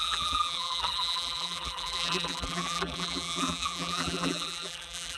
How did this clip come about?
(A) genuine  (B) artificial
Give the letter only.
B